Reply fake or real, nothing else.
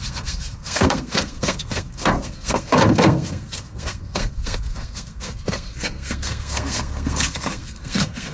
fake